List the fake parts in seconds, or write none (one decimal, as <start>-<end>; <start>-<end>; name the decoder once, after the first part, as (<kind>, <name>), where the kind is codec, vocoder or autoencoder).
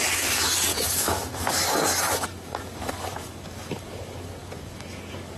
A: 0.0-5.4 (codec, DAC)